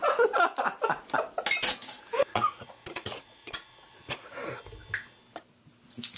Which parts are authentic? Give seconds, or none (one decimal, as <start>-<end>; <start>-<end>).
0.0-2.1; 4.5-6.2